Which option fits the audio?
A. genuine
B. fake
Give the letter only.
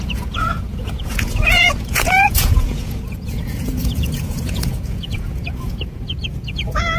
B